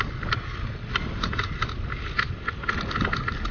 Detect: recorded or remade recorded